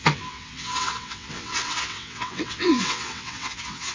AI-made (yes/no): yes